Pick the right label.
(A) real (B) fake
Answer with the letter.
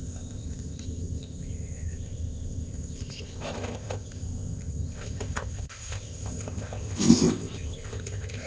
B